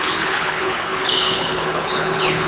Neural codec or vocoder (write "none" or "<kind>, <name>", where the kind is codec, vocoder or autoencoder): codec, HILCodec